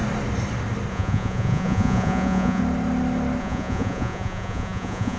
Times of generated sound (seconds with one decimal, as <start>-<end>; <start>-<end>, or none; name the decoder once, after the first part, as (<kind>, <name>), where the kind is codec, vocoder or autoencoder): 0.9-2.6 (vocoder, Vocos); 3.4-5.2